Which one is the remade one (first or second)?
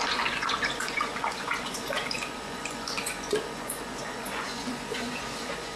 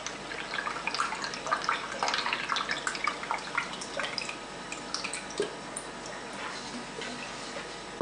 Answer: first